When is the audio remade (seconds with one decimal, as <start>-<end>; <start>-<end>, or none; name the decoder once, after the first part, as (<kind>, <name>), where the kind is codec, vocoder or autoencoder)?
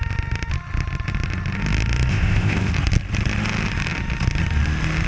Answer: 2.1-2.7 (codec, ZipCodec)